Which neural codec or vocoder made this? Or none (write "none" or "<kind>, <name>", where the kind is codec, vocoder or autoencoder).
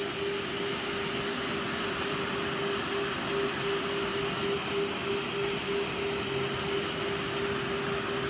none